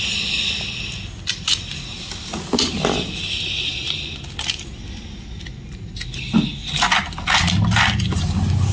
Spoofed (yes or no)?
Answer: no